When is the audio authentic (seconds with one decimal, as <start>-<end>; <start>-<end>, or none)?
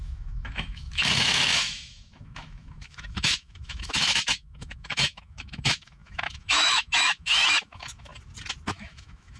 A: 8.1-8.7